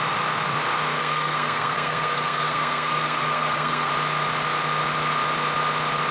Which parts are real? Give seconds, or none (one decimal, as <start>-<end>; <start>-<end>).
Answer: 0.0-1.0; 3.9-6.1